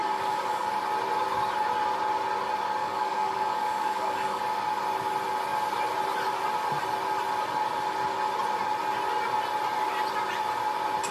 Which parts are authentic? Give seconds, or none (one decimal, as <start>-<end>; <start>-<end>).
0.7-2.8; 4.4-11.1